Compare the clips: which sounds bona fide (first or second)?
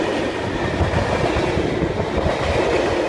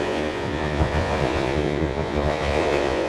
first